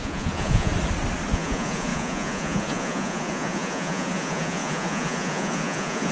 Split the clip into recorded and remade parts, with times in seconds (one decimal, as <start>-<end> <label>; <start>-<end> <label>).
0.0-0.7 remade; 0.7-1.3 recorded; 1.3-6.1 remade